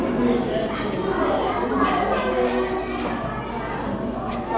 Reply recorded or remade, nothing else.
recorded